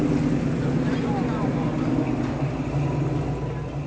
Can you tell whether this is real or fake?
real